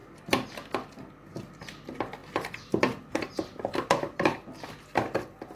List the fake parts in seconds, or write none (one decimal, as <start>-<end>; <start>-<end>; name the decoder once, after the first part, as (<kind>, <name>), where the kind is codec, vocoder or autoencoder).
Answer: none